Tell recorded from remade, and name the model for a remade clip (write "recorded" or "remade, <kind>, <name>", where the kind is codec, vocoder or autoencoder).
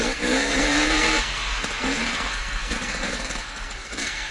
remade, codec, SNAC